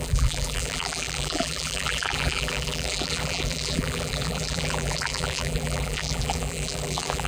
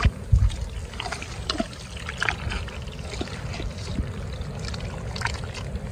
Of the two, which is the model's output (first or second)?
first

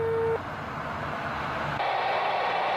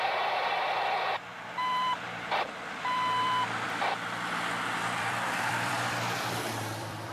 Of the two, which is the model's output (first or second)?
second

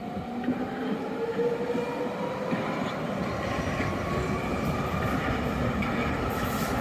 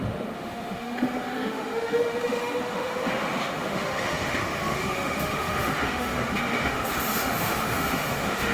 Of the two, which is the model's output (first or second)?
second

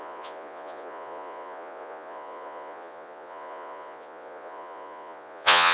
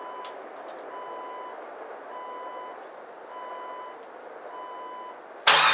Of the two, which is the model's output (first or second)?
first